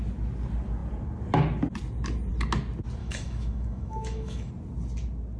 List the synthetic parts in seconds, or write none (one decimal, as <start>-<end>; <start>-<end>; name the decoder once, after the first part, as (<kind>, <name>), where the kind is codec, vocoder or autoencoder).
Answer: 3.0-4.5 (autoencoder, DAC-VAE)